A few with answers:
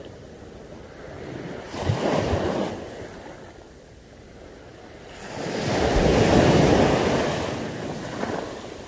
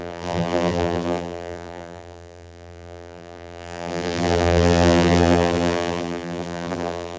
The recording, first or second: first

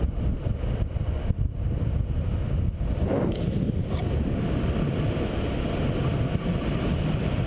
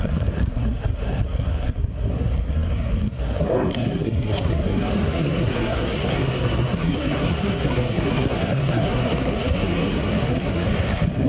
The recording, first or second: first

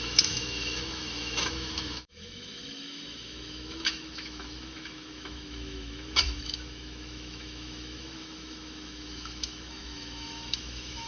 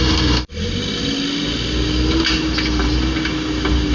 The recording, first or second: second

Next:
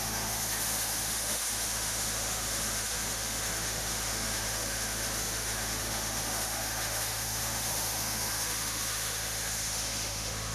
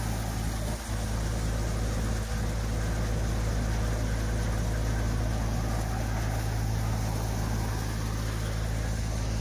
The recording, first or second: second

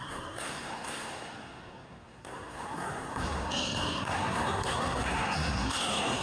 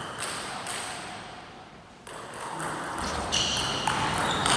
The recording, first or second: second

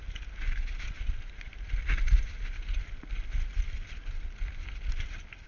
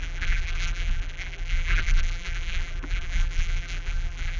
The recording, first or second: first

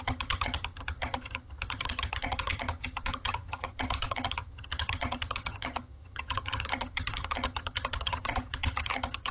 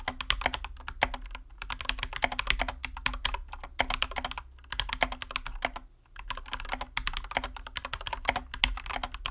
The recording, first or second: second